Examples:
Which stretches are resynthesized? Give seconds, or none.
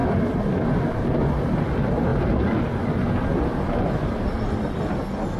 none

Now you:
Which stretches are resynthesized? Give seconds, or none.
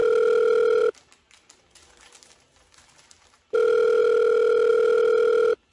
none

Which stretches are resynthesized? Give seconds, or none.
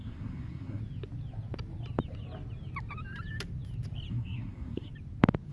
0.0-0.8 (codec, SNAC); 4.1-4.9